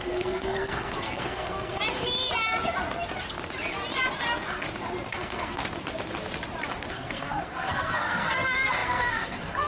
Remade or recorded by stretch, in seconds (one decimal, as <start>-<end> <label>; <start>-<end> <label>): 0.0-1.8 remade; 1.8-5.1 recorded; 5.1-5.6 remade; 5.6-6.9 recorded; 6.9-9.7 remade